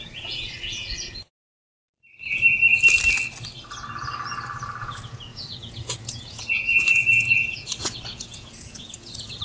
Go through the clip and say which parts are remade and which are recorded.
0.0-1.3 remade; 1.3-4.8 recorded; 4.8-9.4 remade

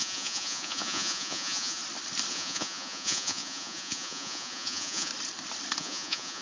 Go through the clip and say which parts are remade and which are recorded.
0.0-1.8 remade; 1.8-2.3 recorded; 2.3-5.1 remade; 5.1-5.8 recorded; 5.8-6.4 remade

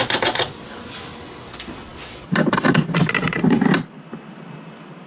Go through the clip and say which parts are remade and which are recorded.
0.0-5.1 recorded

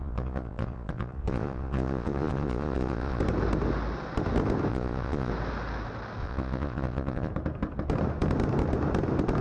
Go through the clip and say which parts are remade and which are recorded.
0.0-3.2 remade; 3.2-4.7 recorded; 4.7-5.3 remade; 5.3-6.2 recorded; 6.2-7.3 remade; 7.3-9.4 recorded

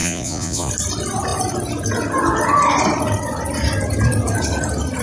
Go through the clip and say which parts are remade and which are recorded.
0.0-0.7 remade; 0.7-5.0 recorded